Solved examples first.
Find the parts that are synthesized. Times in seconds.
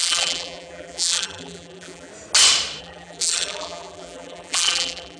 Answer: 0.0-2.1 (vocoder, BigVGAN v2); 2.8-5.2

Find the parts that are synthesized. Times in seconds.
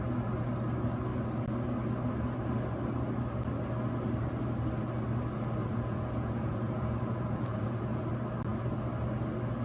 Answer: 5.6-8.1 (vocoder, Vocos)